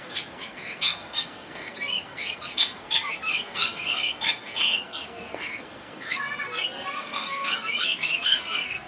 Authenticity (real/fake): fake